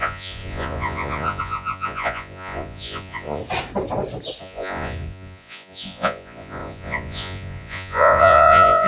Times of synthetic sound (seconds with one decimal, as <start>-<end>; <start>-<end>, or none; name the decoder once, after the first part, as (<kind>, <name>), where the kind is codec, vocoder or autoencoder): 0.0-3.4 (vocoder, Vocos); 4.4-8.9